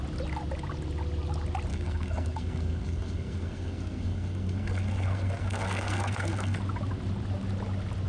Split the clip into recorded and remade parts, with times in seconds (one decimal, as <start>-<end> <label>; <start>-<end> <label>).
0.0-1.7 recorded; 1.7-6.6 remade; 6.6-8.1 recorded